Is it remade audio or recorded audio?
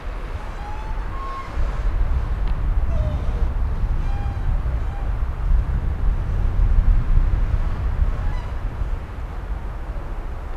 recorded